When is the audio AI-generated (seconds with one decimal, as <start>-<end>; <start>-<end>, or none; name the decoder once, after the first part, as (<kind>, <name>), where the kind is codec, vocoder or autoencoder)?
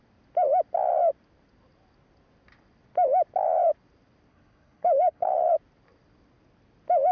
4.3-5.5 (codec, HILCodec)